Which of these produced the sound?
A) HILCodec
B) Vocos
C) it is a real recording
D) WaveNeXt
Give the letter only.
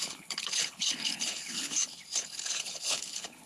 A